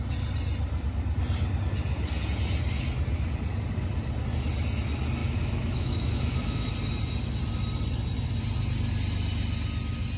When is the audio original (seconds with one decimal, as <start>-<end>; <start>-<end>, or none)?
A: 0.0-5.2; 6.7-10.2